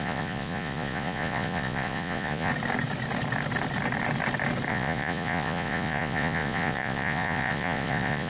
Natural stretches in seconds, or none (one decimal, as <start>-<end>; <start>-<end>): 2.5-4.7